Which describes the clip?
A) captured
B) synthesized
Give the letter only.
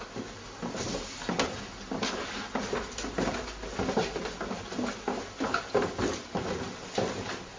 A